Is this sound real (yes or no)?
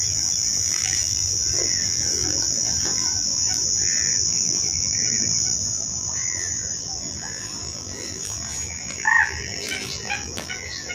no